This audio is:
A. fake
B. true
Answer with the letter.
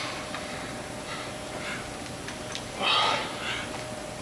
B